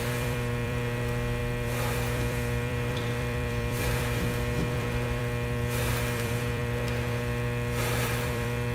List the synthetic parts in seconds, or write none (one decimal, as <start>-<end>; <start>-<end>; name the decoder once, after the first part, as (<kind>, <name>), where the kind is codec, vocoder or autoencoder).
0.0-8.7 (vocoder, BigVGAN v2)